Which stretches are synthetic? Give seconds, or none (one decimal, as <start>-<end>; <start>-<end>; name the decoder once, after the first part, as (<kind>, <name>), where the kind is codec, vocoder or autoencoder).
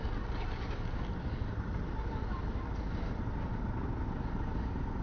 none